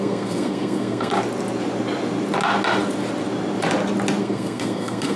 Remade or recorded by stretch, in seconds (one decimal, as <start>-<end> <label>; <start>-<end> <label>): 0.0-1.1 remade; 1.1-4.2 recorded; 4.2-5.2 remade